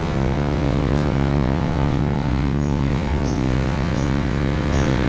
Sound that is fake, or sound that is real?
fake